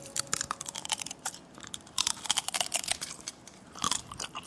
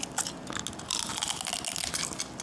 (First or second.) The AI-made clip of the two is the first